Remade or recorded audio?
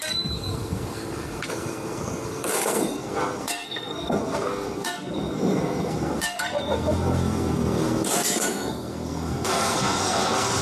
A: remade